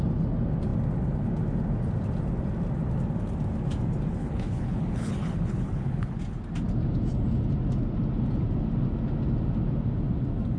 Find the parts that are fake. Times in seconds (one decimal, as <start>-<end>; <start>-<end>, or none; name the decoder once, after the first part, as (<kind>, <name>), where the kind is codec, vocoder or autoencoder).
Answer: 4.2-6.2 (codec, HILCodec)